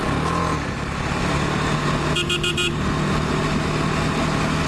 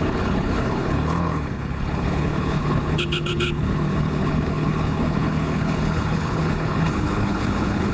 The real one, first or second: first